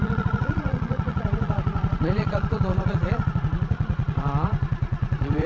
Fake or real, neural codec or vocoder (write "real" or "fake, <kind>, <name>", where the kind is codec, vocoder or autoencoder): fake, vocoder, Vocos